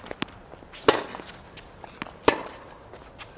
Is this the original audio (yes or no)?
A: yes